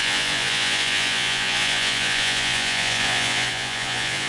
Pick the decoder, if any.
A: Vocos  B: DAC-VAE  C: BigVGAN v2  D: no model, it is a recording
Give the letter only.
A